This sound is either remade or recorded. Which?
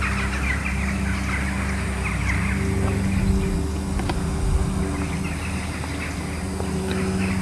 recorded